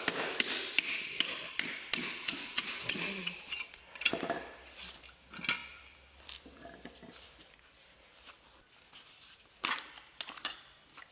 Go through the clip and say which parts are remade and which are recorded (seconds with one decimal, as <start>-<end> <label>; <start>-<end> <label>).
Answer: 0.0-2.0 recorded; 2.0-3.8 remade; 3.8-11.1 recorded